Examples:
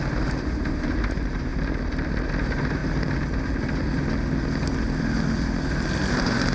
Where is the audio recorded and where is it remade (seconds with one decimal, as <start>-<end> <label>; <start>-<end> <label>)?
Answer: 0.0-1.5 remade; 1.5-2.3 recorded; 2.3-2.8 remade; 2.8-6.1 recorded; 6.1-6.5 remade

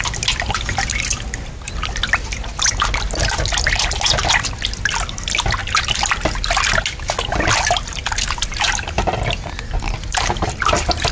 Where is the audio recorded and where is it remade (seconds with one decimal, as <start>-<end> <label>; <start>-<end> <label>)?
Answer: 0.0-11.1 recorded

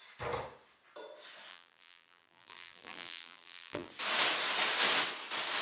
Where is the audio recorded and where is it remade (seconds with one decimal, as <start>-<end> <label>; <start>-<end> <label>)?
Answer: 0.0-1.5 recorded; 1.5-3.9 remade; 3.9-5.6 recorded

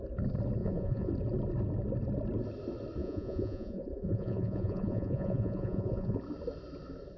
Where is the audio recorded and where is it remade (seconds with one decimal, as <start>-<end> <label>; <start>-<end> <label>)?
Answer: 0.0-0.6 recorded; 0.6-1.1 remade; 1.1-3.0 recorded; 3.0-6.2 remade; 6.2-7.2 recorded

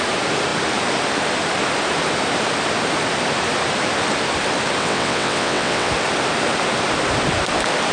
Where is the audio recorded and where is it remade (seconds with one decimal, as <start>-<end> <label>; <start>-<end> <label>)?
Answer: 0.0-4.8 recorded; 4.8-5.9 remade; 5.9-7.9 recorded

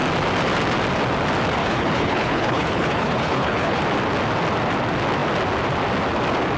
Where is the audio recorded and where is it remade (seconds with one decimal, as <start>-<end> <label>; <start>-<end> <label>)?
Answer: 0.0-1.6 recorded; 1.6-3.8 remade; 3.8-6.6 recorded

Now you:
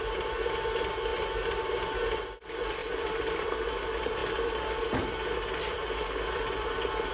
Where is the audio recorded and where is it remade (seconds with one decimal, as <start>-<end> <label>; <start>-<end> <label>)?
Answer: 0.0-2.8 recorded; 2.8-3.4 remade; 3.4-7.1 recorded